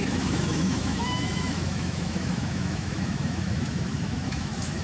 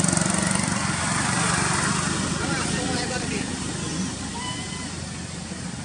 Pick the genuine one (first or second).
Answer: second